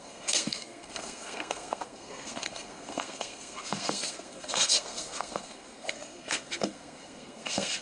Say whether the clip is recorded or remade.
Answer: remade